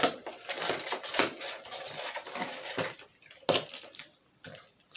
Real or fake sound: real